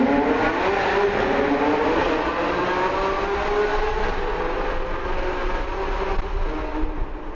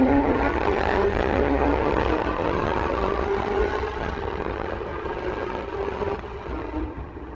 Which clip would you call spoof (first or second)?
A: second